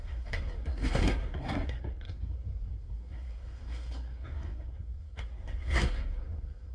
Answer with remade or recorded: remade